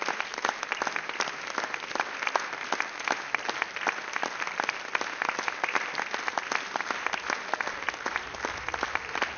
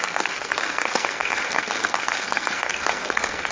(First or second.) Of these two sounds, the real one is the first